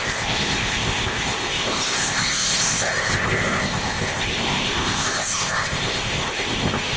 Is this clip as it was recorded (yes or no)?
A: no